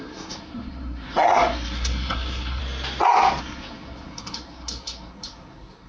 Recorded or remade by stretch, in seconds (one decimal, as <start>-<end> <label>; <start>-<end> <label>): 0.0-2.6 remade; 2.6-3.4 recorded; 3.4-5.9 remade